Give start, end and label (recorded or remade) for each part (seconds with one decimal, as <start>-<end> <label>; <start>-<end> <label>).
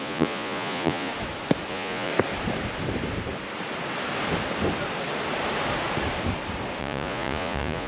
0.0-1.1 remade; 1.1-1.7 recorded; 1.7-2.1 remade; 2.1-6.8 recorded; 6.8-7.9 remade